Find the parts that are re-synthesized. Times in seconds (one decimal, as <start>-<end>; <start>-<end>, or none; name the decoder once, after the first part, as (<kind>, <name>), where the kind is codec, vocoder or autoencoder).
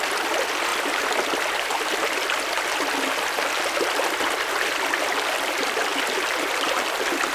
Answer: none